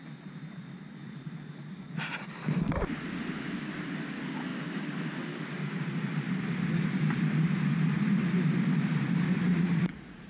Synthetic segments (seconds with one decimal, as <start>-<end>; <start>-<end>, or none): 1.0-2.1; 9.5-10.3